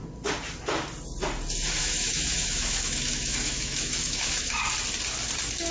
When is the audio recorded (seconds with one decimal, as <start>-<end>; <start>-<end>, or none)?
0.0-1.8; 4.6-5.7